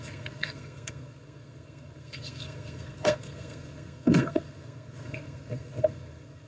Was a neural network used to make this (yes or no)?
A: yes